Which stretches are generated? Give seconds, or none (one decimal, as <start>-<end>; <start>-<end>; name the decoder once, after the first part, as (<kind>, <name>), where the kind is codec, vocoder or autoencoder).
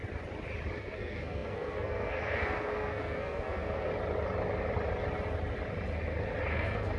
0.8-3.9 (codec, SNAC); 6.5-7.0